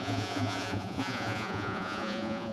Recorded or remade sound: remade